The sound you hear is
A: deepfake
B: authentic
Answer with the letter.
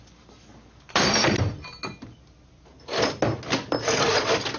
B